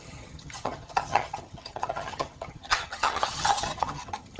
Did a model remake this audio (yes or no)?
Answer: yes